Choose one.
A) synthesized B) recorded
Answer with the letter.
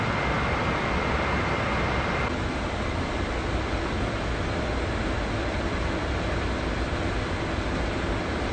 B